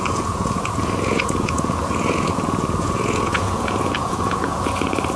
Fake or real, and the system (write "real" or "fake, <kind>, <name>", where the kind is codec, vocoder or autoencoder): fake, vocoder, Vocos